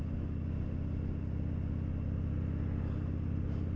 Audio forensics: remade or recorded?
recorded